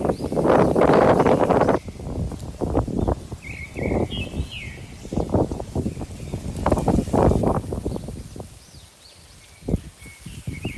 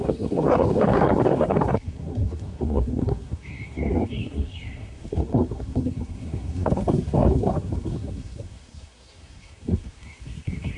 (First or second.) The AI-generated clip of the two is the second